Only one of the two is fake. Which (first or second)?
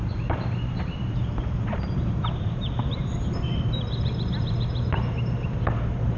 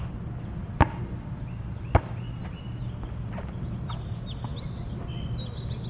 first